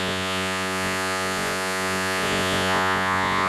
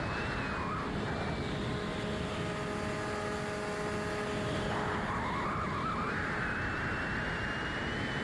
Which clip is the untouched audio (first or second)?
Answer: second